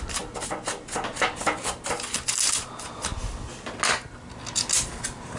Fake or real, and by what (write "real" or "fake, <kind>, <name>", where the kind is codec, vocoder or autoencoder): real